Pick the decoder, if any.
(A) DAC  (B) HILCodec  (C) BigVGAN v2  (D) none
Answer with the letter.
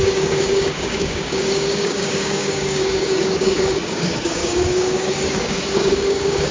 A